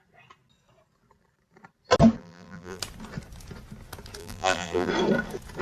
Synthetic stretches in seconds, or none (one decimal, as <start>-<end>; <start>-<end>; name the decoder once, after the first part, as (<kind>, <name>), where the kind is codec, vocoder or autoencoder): 2.2-2.8 (vocoder, BigVGAN v2); 4.2-4.9